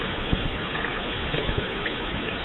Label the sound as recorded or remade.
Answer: remade